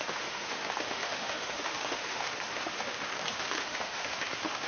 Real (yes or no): no